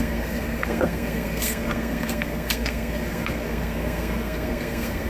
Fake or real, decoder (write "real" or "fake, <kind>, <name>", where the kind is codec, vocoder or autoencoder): fake, codec, SNAC